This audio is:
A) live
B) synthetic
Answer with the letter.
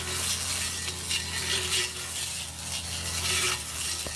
A